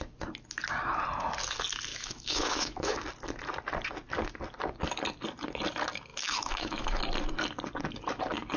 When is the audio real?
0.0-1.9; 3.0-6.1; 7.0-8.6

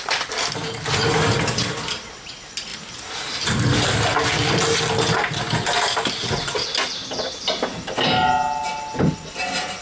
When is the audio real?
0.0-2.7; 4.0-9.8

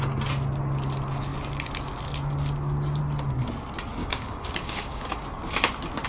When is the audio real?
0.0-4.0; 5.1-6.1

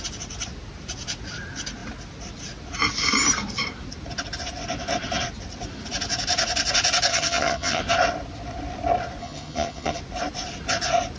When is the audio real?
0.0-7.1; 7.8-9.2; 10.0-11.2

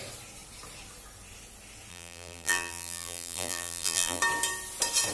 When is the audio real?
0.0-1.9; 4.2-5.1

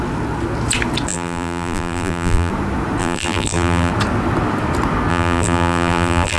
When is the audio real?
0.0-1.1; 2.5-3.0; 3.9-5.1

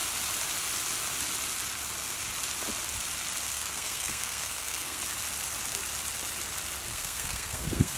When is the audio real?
0.0-3.5; 5.0-6.9